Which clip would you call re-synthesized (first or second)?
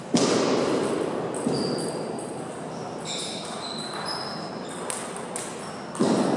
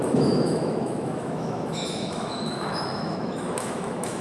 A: second